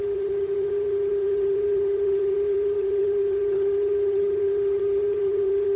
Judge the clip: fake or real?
fake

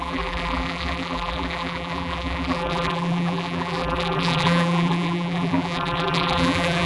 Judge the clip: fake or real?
fake